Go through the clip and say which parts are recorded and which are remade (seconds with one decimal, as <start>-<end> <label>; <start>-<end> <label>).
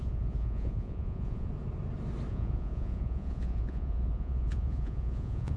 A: 0.0-1.5 remade; 1.5-2.3 recorded; 2.3-5.6 remade